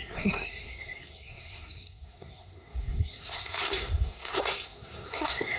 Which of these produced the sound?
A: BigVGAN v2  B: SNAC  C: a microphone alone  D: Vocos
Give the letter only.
B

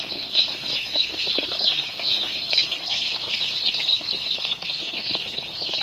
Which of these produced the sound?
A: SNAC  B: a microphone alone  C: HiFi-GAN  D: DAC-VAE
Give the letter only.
A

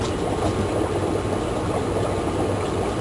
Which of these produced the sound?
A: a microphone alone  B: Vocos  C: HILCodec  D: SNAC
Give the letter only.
A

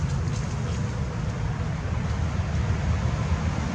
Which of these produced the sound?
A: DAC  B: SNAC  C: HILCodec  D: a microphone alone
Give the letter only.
D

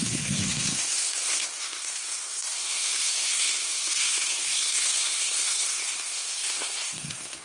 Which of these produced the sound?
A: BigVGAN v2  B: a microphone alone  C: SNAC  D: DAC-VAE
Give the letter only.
C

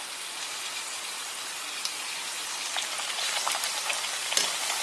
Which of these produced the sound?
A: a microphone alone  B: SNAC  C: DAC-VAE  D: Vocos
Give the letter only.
A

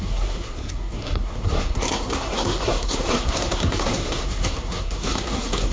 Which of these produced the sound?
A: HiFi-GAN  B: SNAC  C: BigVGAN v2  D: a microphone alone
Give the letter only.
B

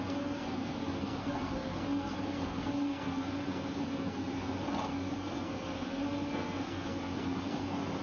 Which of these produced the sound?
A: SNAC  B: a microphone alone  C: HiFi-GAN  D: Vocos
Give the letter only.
A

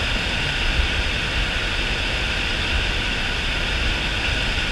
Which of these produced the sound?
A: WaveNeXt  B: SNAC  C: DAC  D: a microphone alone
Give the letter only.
D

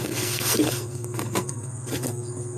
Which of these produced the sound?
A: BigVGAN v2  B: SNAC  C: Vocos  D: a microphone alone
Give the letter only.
B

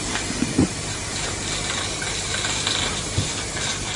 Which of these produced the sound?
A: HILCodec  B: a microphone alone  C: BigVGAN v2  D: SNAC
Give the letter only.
B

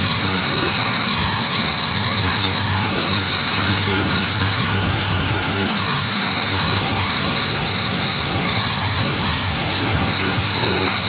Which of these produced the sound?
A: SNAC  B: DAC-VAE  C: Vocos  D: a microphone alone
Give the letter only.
A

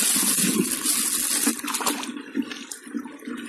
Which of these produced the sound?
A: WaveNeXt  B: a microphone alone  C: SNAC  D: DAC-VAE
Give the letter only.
B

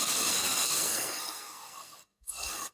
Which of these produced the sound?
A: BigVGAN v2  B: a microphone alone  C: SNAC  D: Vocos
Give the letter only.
C